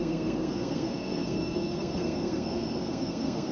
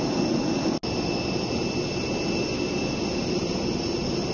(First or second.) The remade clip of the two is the first